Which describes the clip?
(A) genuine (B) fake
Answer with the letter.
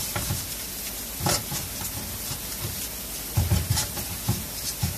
A